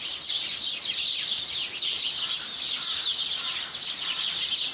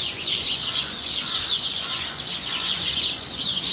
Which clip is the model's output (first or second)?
second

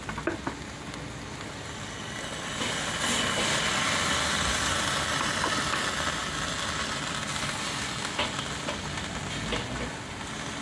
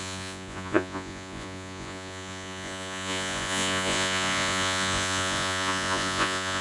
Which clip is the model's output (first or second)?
second